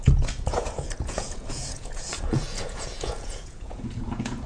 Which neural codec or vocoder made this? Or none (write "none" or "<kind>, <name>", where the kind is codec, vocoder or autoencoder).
vocoder, Vocos